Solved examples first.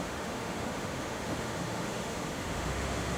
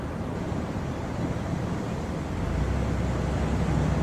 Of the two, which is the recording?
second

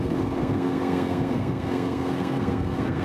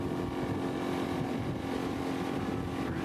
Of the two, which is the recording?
second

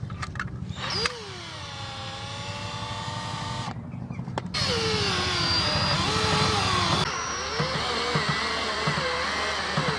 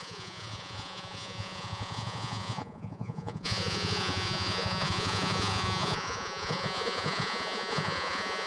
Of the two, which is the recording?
first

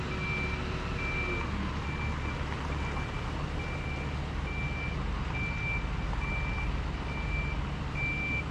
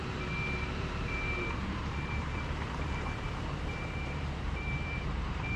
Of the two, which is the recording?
first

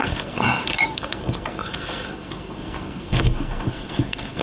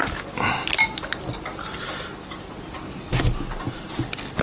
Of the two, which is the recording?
second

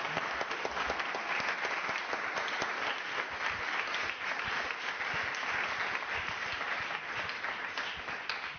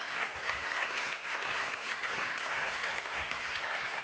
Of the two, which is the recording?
first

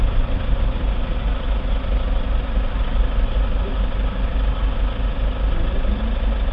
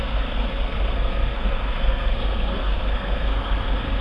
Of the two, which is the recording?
first